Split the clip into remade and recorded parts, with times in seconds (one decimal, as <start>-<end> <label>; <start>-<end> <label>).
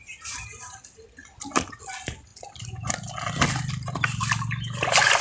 0.0-5.2 recorded